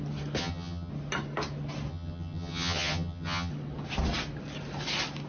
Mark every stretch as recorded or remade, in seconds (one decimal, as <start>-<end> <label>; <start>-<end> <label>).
0.0-0.4 recorded; 0.4-0.9 remade; 0.9-1.9 recorded; 1.9-3.5 remade; 3.5-5.3 recorded